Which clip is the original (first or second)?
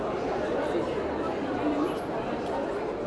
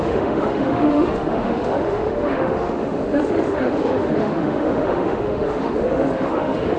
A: first